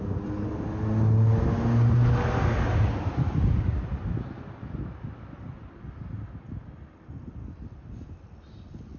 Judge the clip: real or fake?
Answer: real